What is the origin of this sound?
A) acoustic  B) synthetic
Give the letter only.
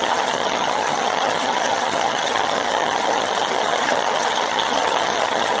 B